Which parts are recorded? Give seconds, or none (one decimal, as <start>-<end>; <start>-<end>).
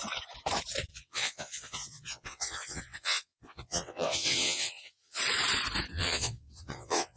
0.0-0.9; 5.2-5.9